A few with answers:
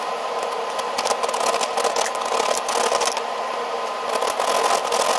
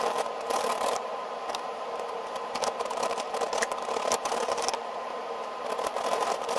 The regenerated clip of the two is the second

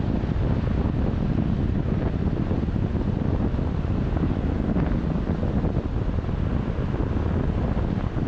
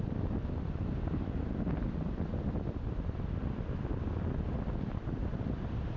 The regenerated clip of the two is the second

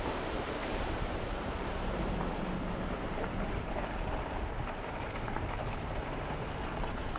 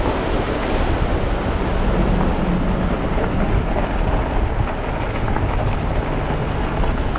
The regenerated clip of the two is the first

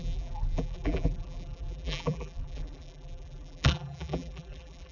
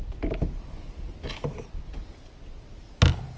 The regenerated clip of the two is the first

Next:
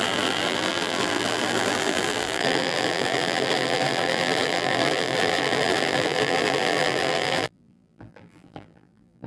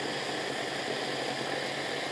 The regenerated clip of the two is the first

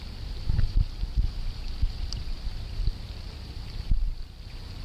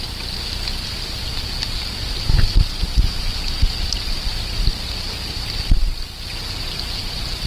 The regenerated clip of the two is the first